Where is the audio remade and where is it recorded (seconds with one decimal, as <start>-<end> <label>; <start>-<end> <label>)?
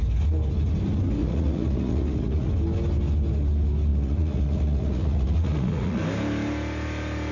0.0-1.2 recorded; 1.2-2.5 remade; 2.5-3.9 recorded; 3.9-6.0 remade; 6.0-7.3 recorded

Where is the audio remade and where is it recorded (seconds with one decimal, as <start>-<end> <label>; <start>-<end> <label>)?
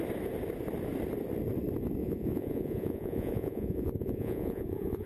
0.0-2.0 recorded; 2.0-5.1 remade